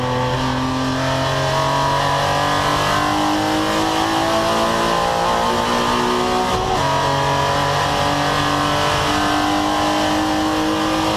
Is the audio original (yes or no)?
yes